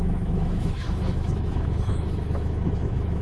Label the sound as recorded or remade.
remade